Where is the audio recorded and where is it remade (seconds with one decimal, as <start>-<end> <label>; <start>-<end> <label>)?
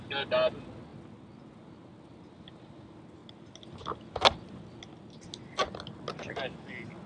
0.0-7.1 recorded